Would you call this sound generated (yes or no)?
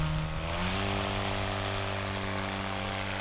no